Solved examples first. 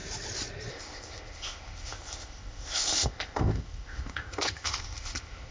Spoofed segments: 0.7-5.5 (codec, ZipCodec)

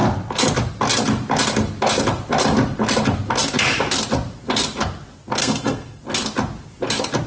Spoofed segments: 5.4-6.0 (codec, SNAC)